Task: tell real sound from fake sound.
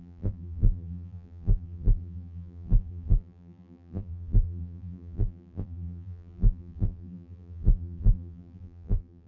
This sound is fake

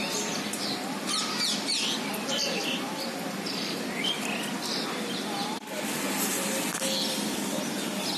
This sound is real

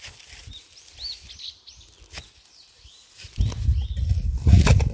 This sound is real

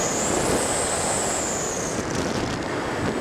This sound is fake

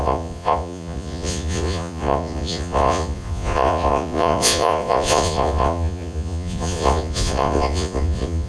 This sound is fake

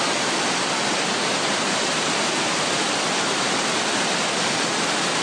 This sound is real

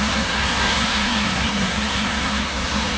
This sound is fake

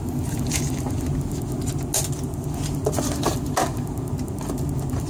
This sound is real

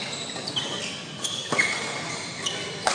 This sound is real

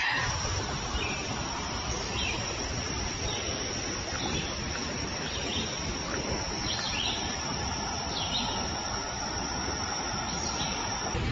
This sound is real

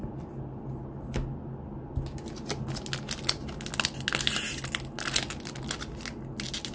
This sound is real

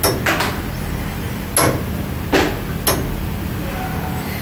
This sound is real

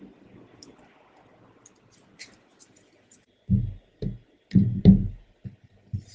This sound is real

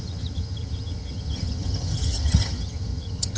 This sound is fake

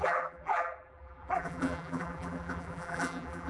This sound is fake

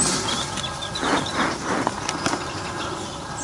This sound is real